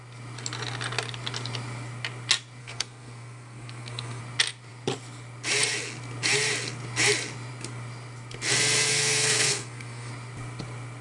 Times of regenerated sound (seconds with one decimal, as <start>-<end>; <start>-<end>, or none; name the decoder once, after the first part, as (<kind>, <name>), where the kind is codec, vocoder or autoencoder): 2.6-4.2 (codec, SNAC); 8.9-10.1